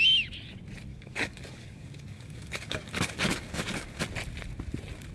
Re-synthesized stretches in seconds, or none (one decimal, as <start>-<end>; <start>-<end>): 0.9-4.0